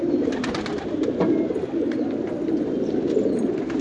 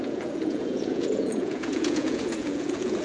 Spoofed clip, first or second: second